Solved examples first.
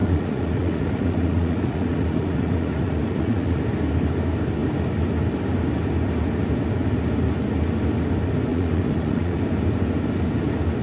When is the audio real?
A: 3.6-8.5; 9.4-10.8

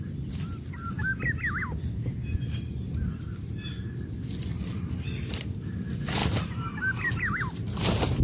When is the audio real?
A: 0.0-6.2